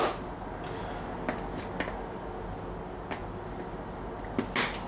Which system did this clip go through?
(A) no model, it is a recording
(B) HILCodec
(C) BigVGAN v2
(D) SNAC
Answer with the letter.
A